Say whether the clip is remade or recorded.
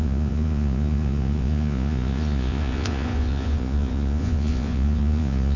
remade